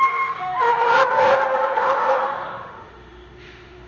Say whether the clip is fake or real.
fake